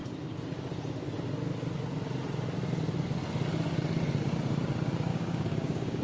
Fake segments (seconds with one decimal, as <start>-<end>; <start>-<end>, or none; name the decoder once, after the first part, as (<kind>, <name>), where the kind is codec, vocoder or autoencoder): 5.1-6.0 (codec, DAC)